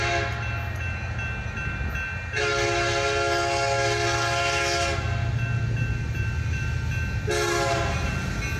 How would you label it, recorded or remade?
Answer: recorded